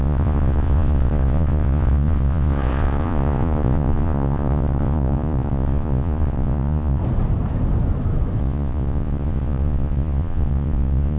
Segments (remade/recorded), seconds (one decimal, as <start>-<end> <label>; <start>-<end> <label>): 0.0-7.0 remade; 7.0-8.4 recorded; 8.4-11.2 remade